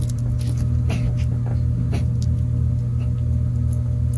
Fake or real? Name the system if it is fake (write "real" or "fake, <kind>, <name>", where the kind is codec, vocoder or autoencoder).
real